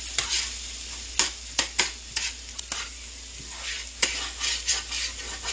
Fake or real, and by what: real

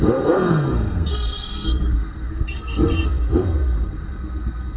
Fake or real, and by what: fake, codec, SNAC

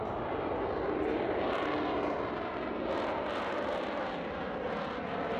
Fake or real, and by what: real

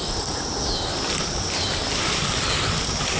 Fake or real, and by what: real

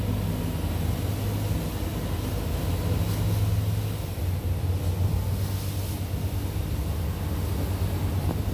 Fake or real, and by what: real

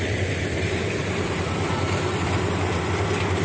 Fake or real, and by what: fake, vocoder, BigVGAN v2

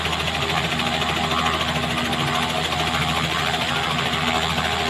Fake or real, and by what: real